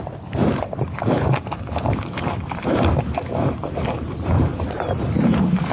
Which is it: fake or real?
fake